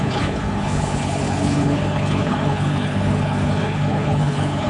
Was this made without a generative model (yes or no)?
no